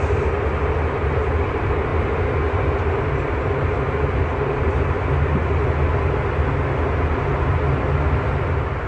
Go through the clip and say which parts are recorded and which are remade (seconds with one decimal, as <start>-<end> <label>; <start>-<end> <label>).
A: 0.0-8.9 recorded